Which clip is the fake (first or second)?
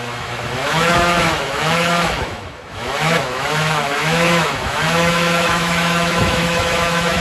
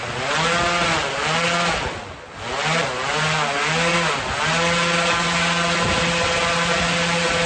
first